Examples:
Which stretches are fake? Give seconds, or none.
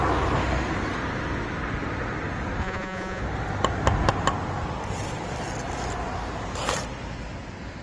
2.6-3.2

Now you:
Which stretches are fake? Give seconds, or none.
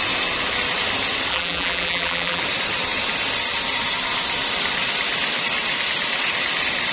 1.3-2.4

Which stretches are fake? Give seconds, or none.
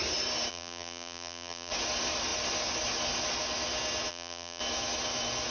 0.5-1.7; 4.1-4.6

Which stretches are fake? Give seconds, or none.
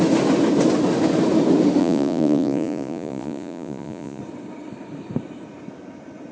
1.8-4.2